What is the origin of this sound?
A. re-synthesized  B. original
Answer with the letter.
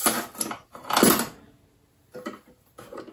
B